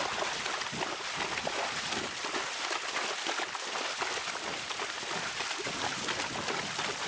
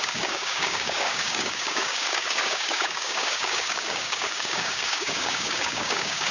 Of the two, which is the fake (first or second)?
second